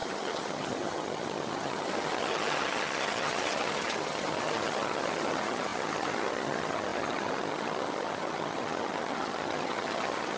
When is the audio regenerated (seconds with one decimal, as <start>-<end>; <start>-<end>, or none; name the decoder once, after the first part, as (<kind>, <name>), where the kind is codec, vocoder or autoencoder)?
0.0-10.4 (vocoder, HiFi-GAN)